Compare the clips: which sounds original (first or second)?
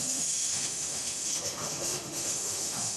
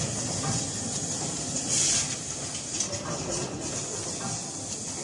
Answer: second